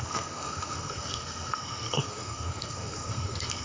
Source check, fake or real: fake